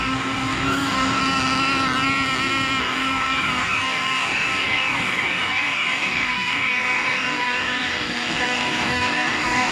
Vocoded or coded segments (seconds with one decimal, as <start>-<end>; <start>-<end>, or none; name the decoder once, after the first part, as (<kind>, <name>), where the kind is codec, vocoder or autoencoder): 0.0-1.2 (codec, DAC); 2.8-9.7